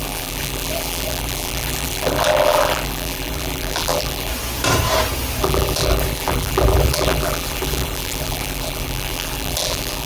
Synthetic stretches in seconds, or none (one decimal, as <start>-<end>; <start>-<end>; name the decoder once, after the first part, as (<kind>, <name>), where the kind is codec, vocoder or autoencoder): 0.0-4.3 (vocoder, BigVGAN v2); 5.4-10.1